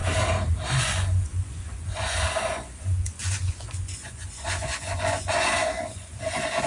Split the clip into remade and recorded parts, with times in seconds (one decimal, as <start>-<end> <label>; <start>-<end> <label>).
0.0-0.8 recorded; 0.8-6.7 remade